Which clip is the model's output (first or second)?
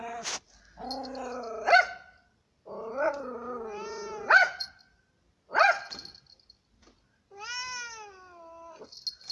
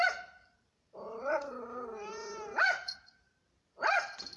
second